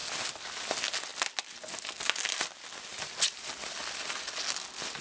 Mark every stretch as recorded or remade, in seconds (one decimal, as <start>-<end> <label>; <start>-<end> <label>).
0.0-5.0 recorded